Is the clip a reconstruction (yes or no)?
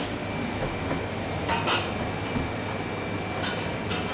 no